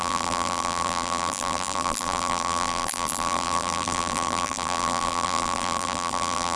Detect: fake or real fake